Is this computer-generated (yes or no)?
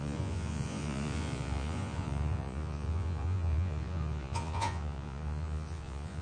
yes